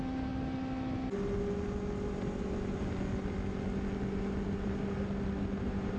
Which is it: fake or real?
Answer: real